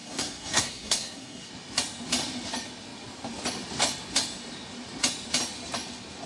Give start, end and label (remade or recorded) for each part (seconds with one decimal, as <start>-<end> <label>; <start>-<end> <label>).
0.0-1.5 remade; 1.5-6.3 recorded